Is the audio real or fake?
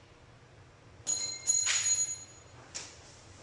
real